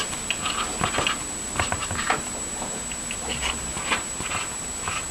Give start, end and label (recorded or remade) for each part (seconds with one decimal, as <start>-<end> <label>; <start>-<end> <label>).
0.0-1.5 recorded; 1.5-4.6 remade; 4.6-5.1 recorded